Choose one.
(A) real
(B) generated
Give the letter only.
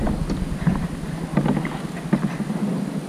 A